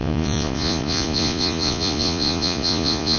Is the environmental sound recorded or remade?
remade